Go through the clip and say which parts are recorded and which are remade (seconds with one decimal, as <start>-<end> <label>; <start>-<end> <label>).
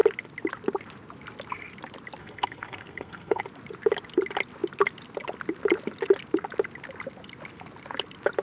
0.0-2.2 recorded; 2.2-3.4 remade; 3.4-8.4 recorded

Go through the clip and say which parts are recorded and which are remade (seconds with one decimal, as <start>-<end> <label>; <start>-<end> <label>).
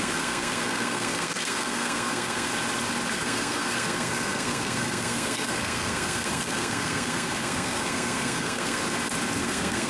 0.0-2.5 remade; 2.5-3.1 recorded; 3.1-8.8 remade; 8.8-9.4 recorded; 9.4-9.9 remade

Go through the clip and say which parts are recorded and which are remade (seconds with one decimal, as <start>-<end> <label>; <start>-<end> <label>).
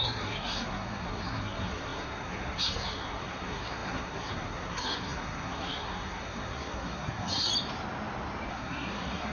0.0-7.5 remade; 7.5-8.5 recorded; 8.5-9.3 remade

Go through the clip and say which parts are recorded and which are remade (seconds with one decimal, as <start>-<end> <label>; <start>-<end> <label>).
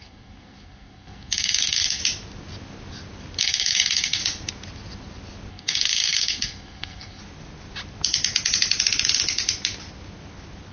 0.0-2.0 remade; 2.0-3.4 recorded; 3.4-4.2 remade; 4.2-5.5 recorded; 5.5-7.2 remade; 7.2-10.7 recorded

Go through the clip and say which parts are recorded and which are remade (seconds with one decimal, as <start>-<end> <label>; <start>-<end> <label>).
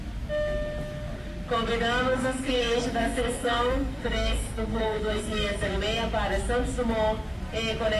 0.0-2.1 recorded; 2.1-5.8 remade; 5.8-8.0 recorded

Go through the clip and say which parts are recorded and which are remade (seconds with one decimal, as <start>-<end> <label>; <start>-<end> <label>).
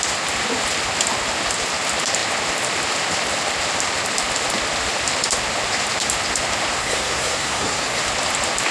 0.0-6.8 recorded; 6.8-8.0 remade; 8.0-8.7 recorded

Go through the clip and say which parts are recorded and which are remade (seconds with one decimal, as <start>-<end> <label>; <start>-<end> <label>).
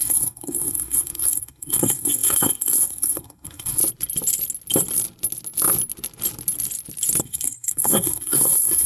0.0-3.8 remade; 3.8-7.2 recorded; 7.2-8.9 remade